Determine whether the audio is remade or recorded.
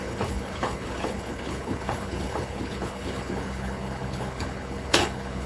remade